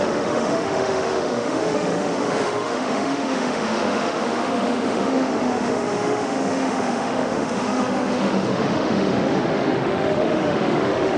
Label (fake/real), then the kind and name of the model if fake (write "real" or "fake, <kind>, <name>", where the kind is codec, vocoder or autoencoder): fake, autoencoder, DAC-VAE